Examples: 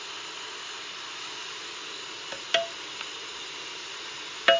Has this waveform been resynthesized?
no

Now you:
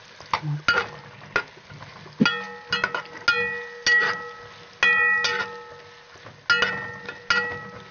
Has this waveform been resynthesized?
no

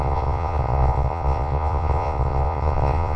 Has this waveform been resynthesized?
yes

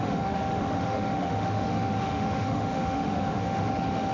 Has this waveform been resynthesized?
yes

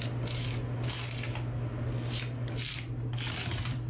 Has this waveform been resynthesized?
no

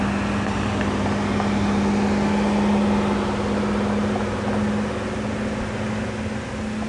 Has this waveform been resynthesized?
no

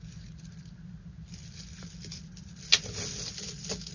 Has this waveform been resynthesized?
no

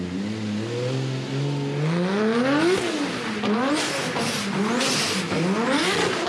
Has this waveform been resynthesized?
no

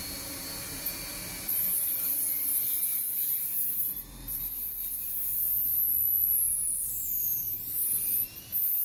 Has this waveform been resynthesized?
yes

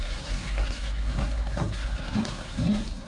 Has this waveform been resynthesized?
yes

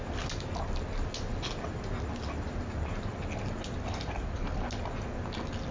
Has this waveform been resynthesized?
no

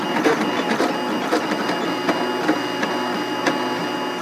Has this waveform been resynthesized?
no